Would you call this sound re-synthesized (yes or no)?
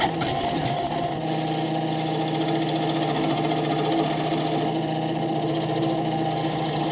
no